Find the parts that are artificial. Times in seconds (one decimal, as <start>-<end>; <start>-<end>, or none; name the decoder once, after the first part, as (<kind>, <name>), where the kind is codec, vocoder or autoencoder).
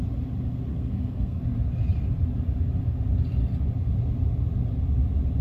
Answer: 0.7-1.4 (codec, SNAC)